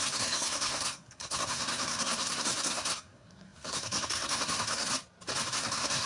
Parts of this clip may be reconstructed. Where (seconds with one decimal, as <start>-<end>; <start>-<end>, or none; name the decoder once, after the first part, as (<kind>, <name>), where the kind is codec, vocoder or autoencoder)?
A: 0.0-4.9 (codec, SNAC); 5.5-6.1